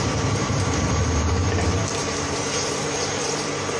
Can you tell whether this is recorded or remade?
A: remade